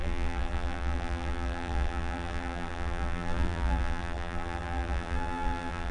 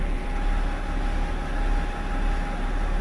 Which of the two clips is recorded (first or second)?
second